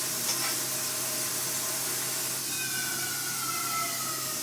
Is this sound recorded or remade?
recorded